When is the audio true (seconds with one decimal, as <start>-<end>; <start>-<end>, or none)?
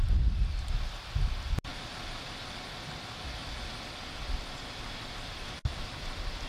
0.0-6.5